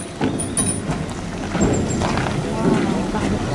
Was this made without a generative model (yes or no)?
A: yes